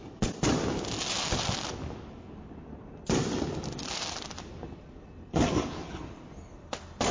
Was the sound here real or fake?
real